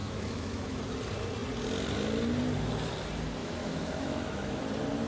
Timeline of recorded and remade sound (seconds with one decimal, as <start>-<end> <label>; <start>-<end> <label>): 0.0-0.8 remade; 0.8-3.4 recorded; 3.4-4.6 remade; 4.6-5.1 recorded